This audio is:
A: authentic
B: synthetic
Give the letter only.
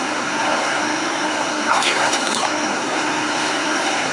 B